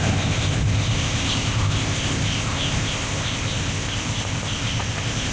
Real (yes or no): no